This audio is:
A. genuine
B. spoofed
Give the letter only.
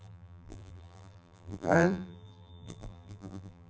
B